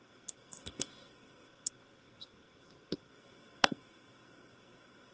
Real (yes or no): no